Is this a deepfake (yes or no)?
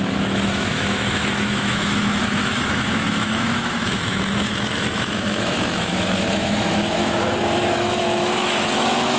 yes